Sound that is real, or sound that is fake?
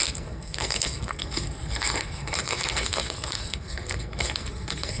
fake